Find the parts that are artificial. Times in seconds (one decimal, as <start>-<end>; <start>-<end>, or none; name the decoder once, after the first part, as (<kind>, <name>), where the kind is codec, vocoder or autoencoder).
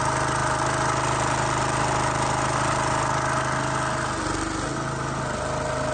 none